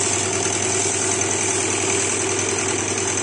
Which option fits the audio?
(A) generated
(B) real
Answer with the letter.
B